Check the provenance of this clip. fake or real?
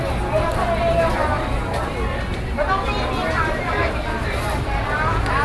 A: real